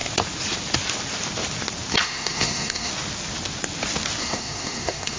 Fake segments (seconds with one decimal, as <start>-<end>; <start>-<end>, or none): 1.9-2.9; 4.2-5.2